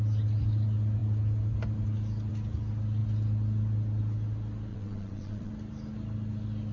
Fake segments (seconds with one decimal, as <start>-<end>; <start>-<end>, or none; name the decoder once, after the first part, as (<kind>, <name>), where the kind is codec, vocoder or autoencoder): 4.7-5.5 (vocoder, WaveNeXt)